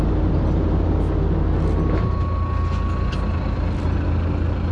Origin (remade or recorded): recorded